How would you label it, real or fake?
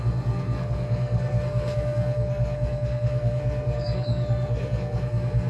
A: fake